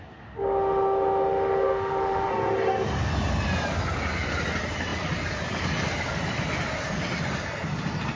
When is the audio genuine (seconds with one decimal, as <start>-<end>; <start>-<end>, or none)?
0.0-0.4; 2.3-8.2